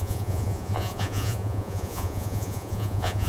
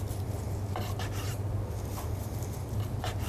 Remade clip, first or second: first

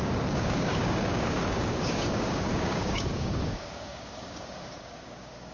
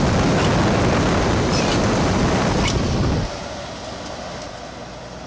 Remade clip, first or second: first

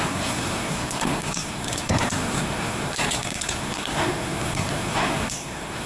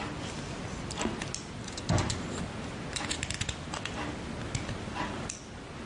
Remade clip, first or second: first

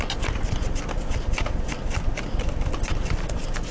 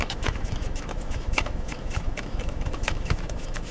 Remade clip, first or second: second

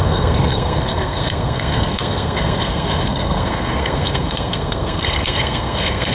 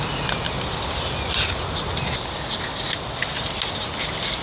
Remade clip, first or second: first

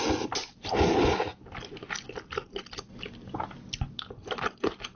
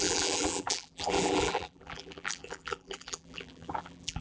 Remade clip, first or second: second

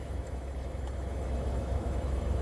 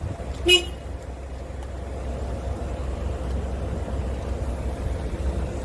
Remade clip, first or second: first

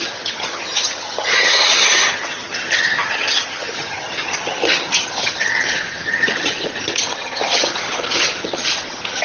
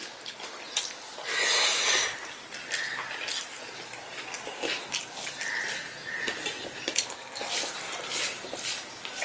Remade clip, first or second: first